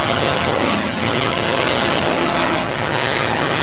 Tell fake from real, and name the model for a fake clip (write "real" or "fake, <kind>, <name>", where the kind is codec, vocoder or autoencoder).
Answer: fake, vocoder, HiFi-GAN